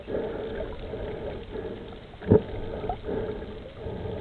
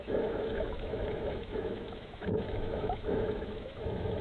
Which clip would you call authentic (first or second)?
first